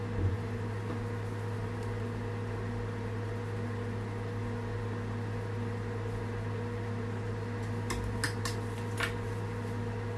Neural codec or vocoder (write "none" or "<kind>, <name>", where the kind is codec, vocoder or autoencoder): none